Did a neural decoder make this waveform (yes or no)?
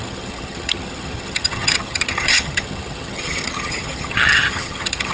yes